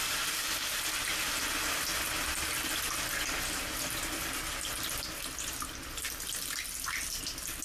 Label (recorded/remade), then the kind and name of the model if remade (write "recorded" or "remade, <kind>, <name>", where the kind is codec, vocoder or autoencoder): recorded